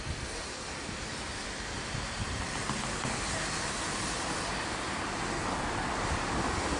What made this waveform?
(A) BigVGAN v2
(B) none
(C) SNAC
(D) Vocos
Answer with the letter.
B